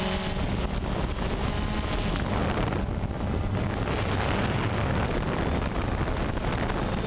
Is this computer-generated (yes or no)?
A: no